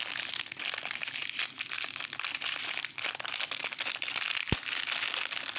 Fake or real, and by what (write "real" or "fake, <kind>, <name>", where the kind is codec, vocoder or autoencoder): real